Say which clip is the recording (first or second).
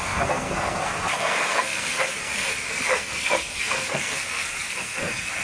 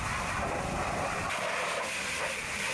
second